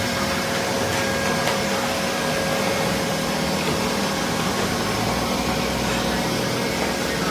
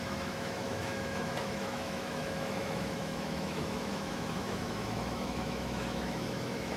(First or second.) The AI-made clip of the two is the second